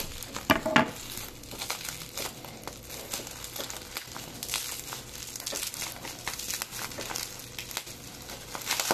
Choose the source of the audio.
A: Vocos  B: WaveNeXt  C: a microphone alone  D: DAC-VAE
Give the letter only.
C